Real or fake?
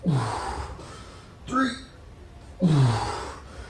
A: real